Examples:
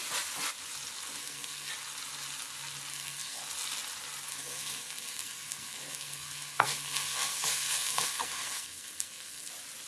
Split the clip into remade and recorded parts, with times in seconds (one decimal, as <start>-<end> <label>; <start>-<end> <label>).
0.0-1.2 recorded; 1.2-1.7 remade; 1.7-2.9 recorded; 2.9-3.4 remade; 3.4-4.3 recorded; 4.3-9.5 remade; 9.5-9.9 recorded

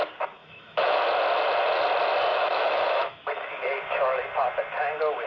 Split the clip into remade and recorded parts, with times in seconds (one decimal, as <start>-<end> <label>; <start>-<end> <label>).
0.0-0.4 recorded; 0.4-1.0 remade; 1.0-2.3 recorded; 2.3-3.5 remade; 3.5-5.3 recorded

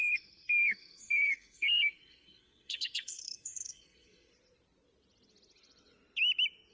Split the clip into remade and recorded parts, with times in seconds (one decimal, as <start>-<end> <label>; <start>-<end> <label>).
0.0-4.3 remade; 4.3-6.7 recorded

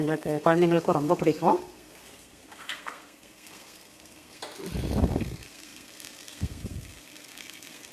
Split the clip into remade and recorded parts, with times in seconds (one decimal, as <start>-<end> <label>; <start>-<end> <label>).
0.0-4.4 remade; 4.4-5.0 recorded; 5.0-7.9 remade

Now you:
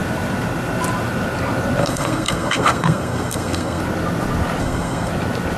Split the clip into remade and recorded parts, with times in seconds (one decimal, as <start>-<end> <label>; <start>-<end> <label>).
0.0-1.8 recorded; 1.8-3.8 remade; 3.8-4.6 recorded; 4.6-5.1 remade; 5.1-5.6 recorded